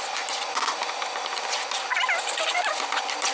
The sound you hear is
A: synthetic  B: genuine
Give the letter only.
B